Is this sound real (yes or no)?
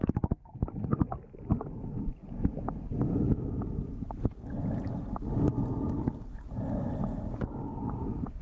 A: yes